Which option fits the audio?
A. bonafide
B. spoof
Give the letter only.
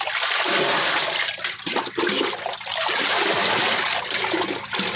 A